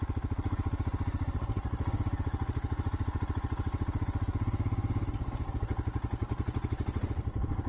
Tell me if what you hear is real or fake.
real